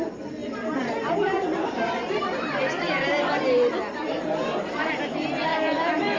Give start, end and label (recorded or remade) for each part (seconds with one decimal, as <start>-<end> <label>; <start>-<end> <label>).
0.0-5.5 recorded; 5.5-6.2 remade